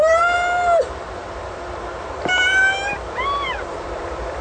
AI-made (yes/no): yes